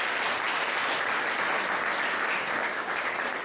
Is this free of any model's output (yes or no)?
yes